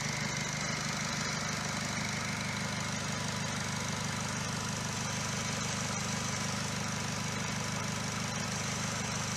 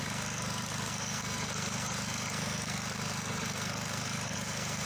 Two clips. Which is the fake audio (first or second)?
second